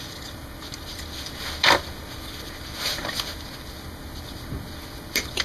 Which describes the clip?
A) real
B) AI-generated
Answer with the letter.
A